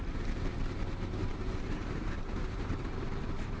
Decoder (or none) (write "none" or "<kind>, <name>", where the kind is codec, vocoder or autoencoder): vocoder, BigVGAN v2